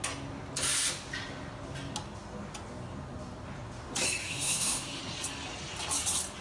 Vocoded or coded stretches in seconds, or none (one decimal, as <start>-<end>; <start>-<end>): 4.2-5.0

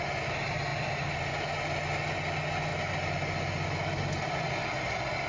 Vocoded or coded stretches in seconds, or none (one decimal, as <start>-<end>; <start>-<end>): none

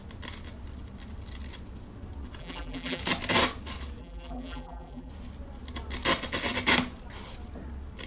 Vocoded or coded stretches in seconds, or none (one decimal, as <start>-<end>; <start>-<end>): 2.4-3.0; 4.0-5.1